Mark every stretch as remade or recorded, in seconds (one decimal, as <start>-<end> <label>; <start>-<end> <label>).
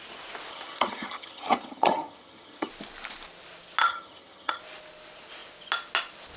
0.0-0.5 recorded; 0.5-2.7 remade; 2.7-3.8 recorded; 3.8-4.6 remade; 4.6-6.4 recorded